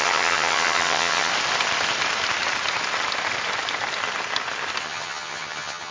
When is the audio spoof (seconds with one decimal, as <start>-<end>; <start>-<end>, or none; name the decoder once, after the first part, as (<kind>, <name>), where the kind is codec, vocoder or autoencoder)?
0.0-1.3 (vocoder, HiFi-GAN); 4.8-5.9